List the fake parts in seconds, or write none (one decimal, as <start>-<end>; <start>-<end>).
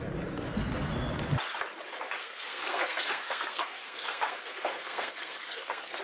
2.2-6.0